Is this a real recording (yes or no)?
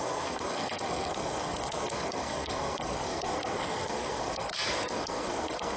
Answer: no